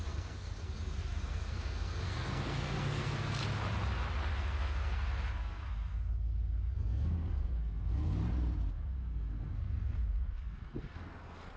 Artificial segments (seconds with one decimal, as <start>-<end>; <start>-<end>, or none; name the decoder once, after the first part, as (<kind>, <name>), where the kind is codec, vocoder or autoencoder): 0.0-3.4 (codec, SNAC); 4.3-8.2; 8.7-11.6